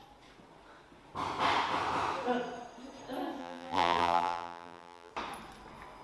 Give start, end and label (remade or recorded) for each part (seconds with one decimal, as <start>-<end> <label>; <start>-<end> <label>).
0.0-3.4 recorded; 3.4-5.1 remade; 5.1-6.0 recorded